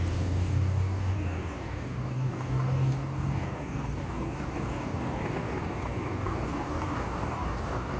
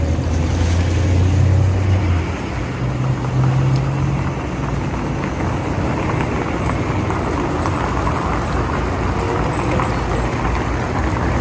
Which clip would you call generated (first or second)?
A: first